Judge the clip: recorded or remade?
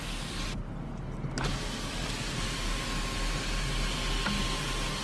recorded